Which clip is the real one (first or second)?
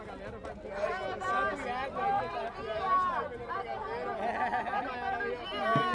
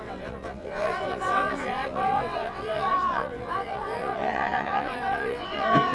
first